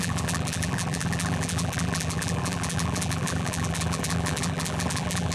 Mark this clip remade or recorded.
remade